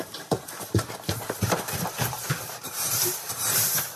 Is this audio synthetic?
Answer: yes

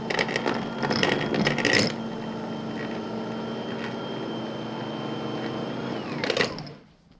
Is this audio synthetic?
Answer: no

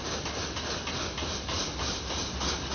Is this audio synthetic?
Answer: no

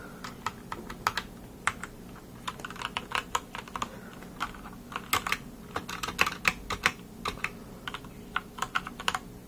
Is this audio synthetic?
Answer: no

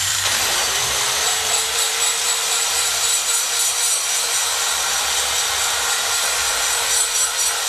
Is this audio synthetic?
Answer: yes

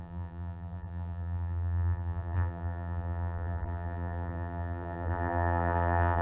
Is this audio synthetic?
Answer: yes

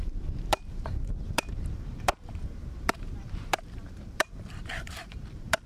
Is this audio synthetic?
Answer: yes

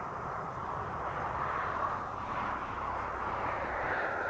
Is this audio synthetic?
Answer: yes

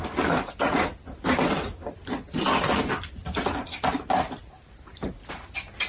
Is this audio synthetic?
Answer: no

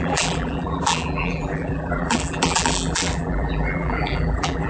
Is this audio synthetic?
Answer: yes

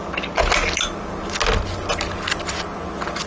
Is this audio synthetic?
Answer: no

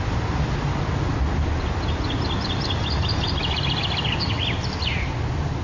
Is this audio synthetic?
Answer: no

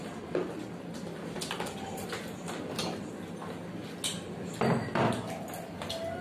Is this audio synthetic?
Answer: no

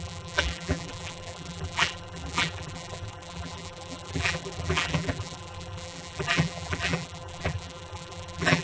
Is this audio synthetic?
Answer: yes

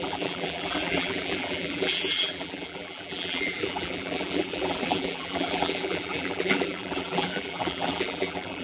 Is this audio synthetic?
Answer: yes